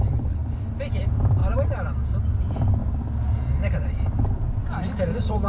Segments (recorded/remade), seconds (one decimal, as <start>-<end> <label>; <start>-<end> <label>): 0.0-0.4 remade; 0.4-0.9 recorded; 0.9-1.4 remade; 1.4-2.4 recorded; 2.4-2.8 remade; 2.8-3.3 recorded; 3.3-5.5 remade